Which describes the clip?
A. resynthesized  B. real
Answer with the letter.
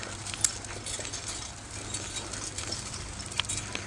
B